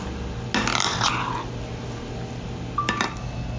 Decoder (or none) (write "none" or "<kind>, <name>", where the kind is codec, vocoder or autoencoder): none